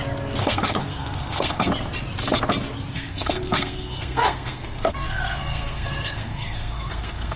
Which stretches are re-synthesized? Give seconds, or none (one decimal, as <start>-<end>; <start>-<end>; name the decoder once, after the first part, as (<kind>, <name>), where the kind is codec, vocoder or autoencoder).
0.4-1.7 (codec, SNAC); 2.9-7.4